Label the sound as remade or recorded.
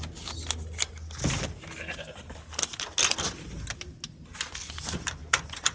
recorded